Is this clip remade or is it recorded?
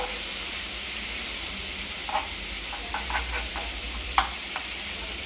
remade